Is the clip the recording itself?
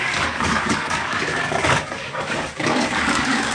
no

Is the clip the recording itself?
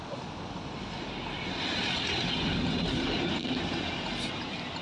yes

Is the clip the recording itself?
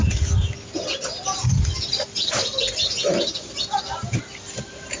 yes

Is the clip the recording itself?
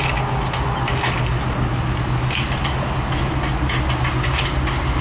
yes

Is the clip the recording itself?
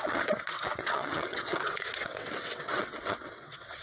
no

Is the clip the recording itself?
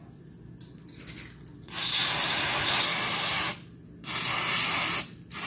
yes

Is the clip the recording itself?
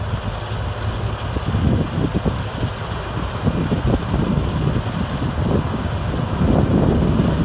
yes